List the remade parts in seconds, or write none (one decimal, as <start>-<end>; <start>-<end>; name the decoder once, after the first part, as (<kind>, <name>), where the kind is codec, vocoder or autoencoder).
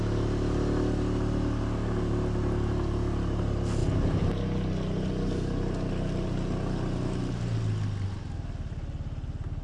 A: none